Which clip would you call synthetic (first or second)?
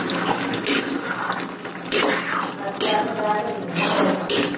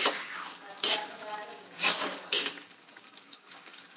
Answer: second